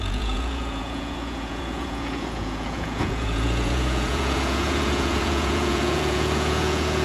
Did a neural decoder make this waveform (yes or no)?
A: yes